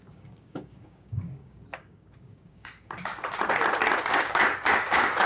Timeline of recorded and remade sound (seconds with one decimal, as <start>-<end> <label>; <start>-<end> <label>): 0.0-3.1 remade; 3.1-4.1 recorded; 4.1-5.3 remade